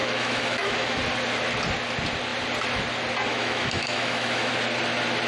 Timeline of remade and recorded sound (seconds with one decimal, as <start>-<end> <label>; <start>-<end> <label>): 0.0-1.0 remade; 1.0-3.3 recorded; 3.3-4.5 remade; 4.5-5.3 recorded